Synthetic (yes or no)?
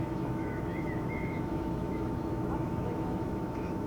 yes